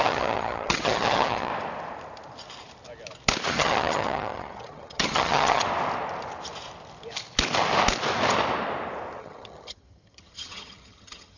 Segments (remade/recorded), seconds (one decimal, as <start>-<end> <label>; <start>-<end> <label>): 0.0-1.5 remade; 1.5-3.5 recorded; 3.5-5.6 remade; 5.6-9.2 recorded; 9.2-11.4 remade